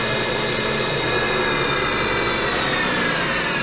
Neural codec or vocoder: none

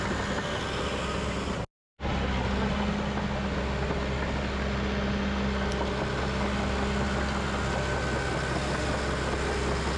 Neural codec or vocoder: none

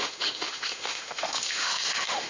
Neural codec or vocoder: autoencoder, DAC-VAE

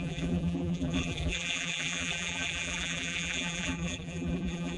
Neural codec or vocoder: vocoder, BigVGAN v2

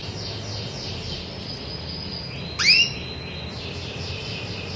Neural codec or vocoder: none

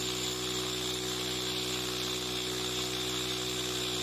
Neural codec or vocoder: none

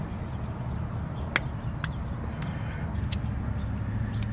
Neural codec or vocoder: none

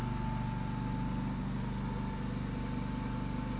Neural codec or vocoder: none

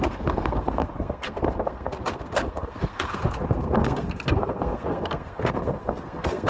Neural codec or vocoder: codec, SNAC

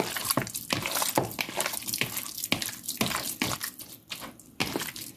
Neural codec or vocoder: none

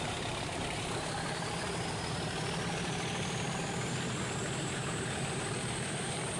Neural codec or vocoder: vocoder, BigVGAN v2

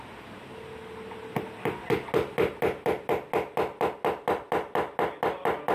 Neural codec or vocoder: none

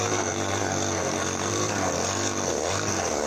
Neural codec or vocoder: codec, SNAC